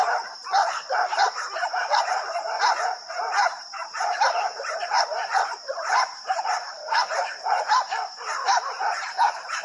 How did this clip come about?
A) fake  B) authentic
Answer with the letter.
A